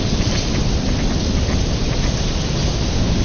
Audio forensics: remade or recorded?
recorded